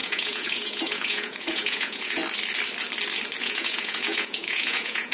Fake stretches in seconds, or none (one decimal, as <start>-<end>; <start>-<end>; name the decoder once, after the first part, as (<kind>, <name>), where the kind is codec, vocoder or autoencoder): 0.0-2.2 (vocoder, Vocos); 3.4-5.1